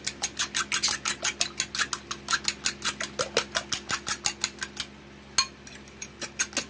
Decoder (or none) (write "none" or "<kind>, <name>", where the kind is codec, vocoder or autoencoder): none